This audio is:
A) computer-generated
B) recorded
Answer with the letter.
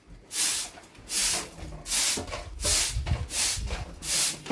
B